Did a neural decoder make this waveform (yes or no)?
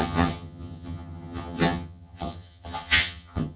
yes